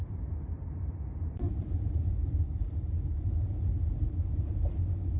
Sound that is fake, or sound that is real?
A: fake